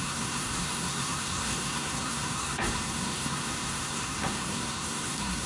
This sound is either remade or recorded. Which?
remade